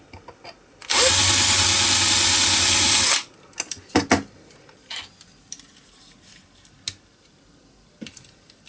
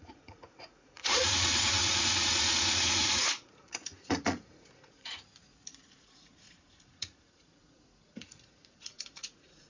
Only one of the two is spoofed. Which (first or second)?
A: second